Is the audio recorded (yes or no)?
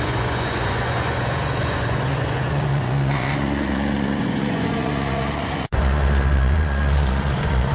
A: no